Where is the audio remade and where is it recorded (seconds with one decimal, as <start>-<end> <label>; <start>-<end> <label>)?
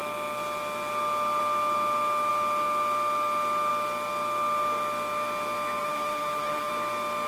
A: 0.0-5.8 recorded; 5.8-6.7 remade; 6.7-7.3 recorded